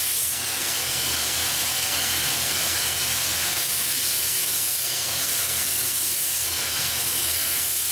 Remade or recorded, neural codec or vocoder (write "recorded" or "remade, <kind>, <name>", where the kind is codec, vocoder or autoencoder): remade, codec, SNAC